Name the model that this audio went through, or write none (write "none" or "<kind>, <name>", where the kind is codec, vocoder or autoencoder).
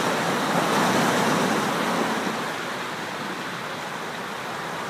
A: none